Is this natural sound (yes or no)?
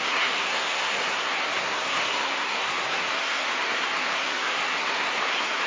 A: no